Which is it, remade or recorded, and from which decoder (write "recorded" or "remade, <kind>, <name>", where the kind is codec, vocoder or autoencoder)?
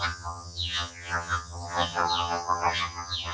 remade, vocoder, HiFi-GAN